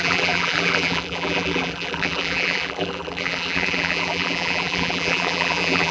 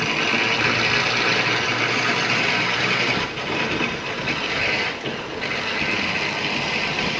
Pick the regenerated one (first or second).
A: first